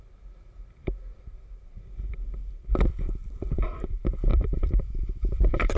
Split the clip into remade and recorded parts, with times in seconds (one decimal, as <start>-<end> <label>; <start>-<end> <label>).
0.0-3.2 recorded; 3.2-3.8 remade; 3.8-4.3 recorded; 4.3-5.8 remade